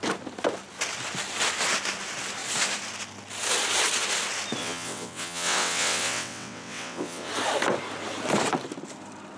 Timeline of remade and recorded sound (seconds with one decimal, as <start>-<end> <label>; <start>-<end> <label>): 0.0-4.6 recorded; 4.6-7.3 remade; 7.3-9.4 recorded